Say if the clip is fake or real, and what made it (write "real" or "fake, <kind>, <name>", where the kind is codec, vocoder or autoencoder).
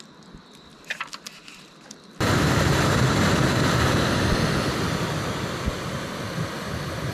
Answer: real